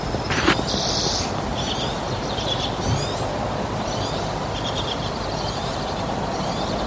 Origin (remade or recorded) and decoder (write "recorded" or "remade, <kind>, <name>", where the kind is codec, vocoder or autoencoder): recorded